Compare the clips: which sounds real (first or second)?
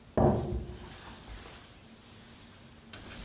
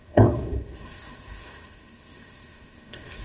first